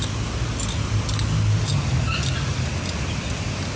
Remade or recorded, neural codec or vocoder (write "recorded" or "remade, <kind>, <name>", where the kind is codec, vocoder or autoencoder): recorded